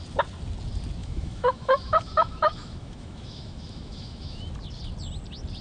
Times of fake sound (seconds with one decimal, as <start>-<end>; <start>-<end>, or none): 1.0-4.4

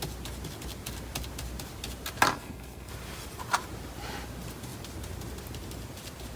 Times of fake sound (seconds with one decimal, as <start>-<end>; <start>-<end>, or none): 2.3-2.9

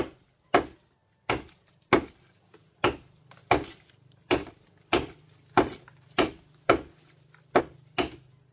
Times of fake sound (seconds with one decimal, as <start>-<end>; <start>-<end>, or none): 3.4-7.6

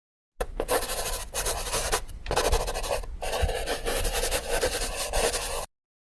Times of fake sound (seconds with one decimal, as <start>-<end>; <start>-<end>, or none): 3.6-5.6

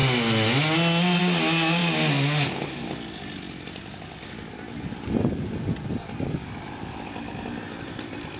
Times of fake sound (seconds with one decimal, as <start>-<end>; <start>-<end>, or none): none

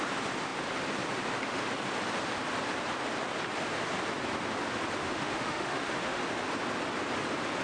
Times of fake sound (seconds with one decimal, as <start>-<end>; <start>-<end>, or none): 5.0-6.2